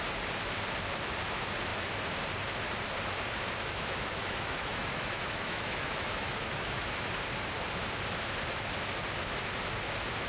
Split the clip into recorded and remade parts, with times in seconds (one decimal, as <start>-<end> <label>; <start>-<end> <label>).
0.0-3.6 recorded; 3.6-7.1 remade; 7.1-10.3 recorded